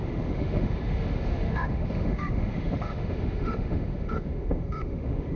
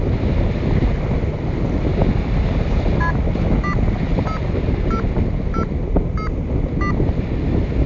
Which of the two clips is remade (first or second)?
first